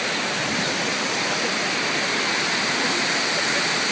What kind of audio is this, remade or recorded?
recorded